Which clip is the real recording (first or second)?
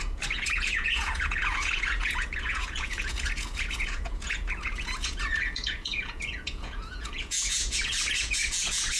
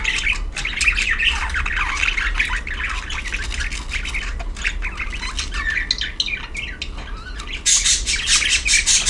second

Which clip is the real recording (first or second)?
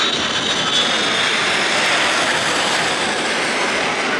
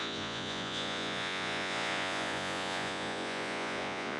first